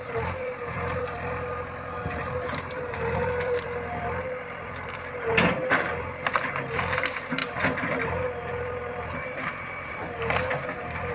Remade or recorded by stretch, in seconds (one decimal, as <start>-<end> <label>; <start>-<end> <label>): 0.0-7.4 remade; 7.4-8.5 recorded; 8.5-11.1 remade